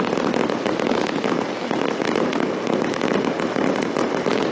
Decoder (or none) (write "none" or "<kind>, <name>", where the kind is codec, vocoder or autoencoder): none